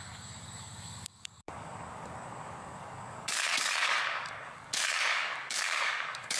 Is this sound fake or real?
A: fake